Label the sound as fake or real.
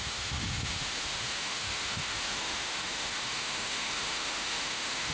fake